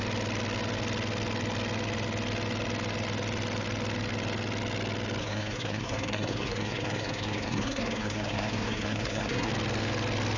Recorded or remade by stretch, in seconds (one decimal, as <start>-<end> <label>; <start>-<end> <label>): 0.0-5.2 recorded; 5.2-9.5 remade; 9.5-10.4 recorded